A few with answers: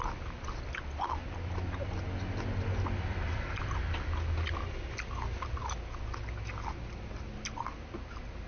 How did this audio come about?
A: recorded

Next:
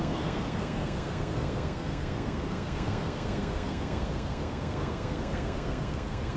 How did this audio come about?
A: remade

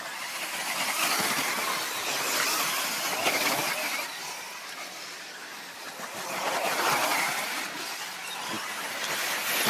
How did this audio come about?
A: recorded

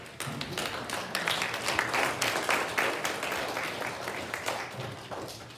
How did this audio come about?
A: recorded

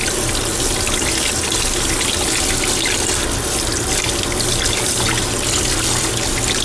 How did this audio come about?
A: recorded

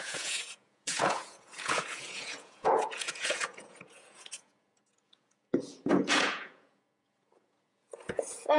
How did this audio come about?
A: remade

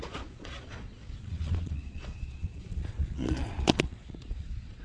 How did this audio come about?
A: remade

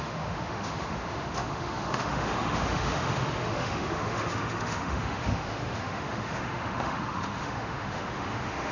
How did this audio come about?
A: remade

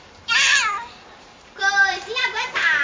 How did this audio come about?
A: remade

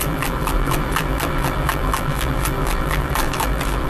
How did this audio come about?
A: remade